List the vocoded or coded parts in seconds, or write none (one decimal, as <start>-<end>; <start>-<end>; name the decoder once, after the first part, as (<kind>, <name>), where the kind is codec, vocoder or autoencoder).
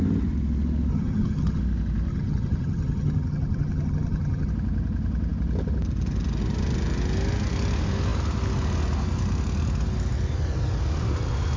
0.9-1.6 (vocoder, HiFi-GAN); 2.1-4.5